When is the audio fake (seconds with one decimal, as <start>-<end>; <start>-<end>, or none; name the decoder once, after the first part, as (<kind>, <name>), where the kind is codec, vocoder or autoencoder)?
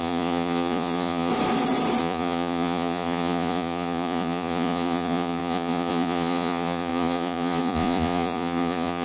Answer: 0.0-1.3 (vocoder, Vocos); 2.0-9.0